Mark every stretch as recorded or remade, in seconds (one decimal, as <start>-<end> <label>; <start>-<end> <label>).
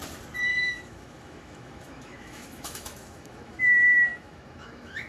0.0-0.5 recorded; 0.5-3.6 remade; 3.6-4.1 recorded; 4.1-5.1 remade